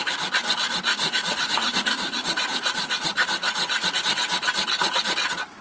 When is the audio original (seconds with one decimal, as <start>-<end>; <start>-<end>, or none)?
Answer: 0.0-0.9; 4.0-5.6